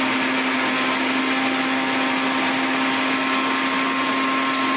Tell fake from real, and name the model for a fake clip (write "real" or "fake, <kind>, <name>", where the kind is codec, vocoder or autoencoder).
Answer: real